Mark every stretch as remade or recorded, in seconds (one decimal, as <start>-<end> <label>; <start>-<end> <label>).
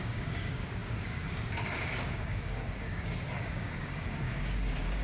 0.0-5.0 remade